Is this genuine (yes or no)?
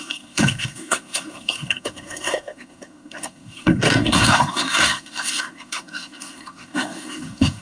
no